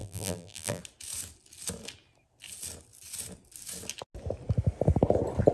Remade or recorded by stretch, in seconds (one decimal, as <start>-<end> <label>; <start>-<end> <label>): 0.0-0.8 remade; 0.8-5.5 recorded